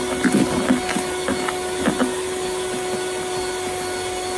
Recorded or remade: recorded